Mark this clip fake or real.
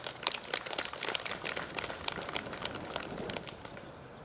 real